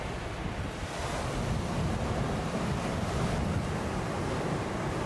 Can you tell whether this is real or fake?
real